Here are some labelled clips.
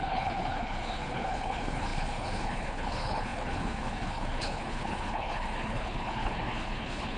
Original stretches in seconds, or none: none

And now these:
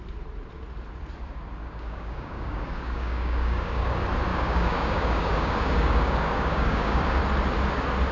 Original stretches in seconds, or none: 0.0-1.6; 3.9-4.3; 7.2-8.1

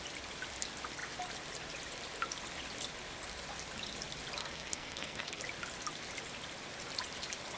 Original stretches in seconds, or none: 0.0-4.4; 5.4-7.6

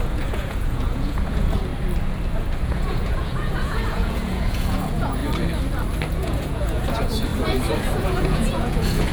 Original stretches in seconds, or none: 1.7-2.6; 5.2-6.1; 7.3-8.0

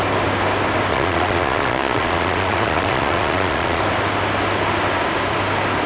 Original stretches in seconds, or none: 0.0-0.9; 3.8-5.9

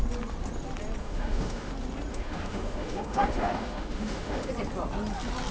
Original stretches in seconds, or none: 0.0-1.0; 1.7-2.1; 4.5-5.5

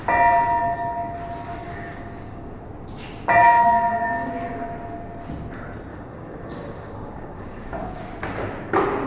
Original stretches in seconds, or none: 0.0-1.6; 2.6-3.4; 4.3-5.9; 8.0-9.1